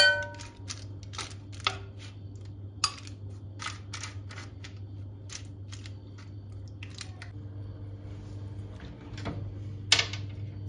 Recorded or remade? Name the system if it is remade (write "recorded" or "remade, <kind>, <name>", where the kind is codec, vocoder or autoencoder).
recorded